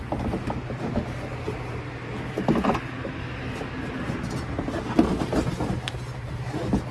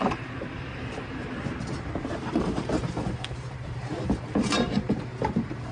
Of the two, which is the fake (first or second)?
second